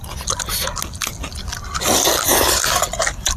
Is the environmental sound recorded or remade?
recorded